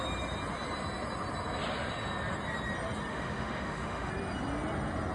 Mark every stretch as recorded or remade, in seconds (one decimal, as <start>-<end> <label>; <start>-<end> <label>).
0.0-3.1 recorded; 3.1-4.1 remade; 4.1-5.1 recorded